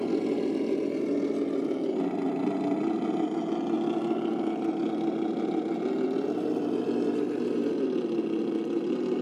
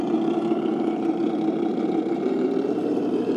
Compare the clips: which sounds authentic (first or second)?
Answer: first